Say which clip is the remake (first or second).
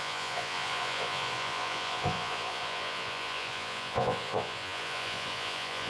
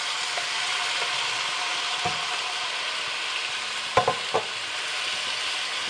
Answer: first